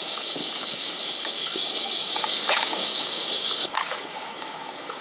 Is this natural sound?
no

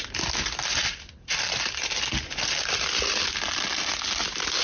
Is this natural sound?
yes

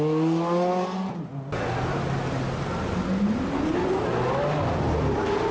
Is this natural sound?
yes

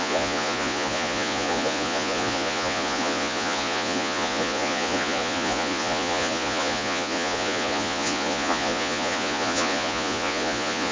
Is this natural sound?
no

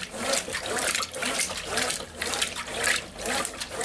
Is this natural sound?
yes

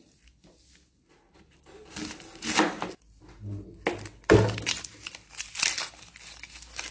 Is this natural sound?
yes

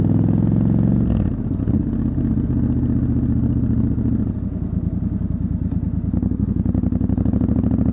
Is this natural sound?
yes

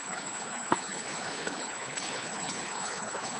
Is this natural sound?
no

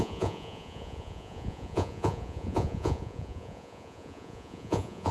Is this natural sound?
no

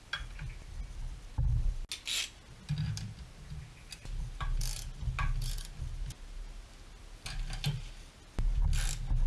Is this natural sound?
yes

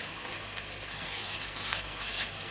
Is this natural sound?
no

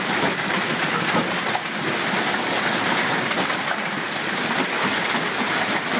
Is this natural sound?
yes